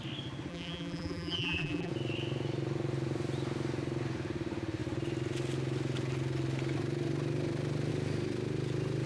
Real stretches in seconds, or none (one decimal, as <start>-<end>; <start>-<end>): 0.0-0.5; 1.9-9.1